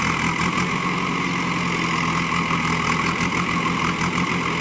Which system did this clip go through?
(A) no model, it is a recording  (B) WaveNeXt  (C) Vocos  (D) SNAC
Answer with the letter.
A